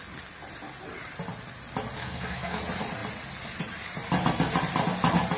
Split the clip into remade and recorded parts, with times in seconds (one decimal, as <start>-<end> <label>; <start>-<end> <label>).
0.0-2.0 recorded; 2.0-2.6 remade; 2.6-5.4 recorded